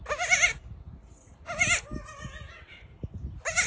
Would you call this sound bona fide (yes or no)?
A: yes